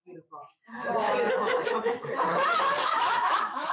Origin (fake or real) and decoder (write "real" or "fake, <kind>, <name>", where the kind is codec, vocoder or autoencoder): fake, autoencoder, DAC-VAE